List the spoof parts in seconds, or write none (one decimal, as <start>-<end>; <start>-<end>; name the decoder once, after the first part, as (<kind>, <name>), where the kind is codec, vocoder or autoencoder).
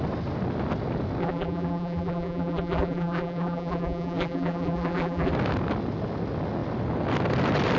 1.2-5.3 (vocoder, BigVGAN v2)